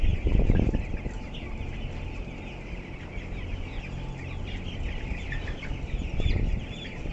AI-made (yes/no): no